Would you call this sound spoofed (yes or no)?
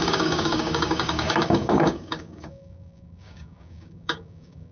yes